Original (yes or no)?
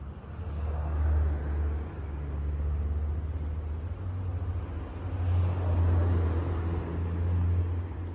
yes